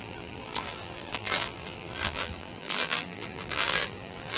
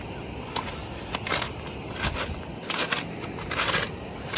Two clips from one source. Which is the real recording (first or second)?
second